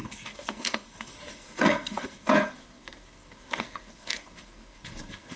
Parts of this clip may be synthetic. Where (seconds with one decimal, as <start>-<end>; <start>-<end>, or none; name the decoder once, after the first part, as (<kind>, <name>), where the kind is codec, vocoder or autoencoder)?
0.0-5.4 (codec, SNAC)